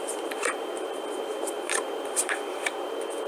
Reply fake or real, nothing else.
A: fake